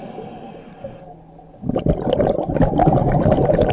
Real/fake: real